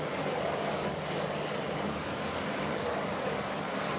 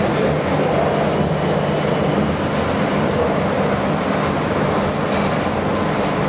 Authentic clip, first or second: second